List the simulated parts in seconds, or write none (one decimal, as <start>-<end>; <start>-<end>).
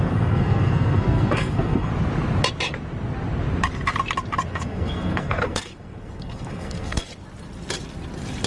0.0-1.9; 4.5-7.1